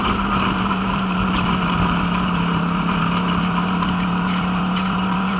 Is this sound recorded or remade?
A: remade